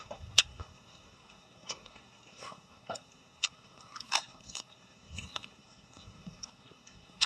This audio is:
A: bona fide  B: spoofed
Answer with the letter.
B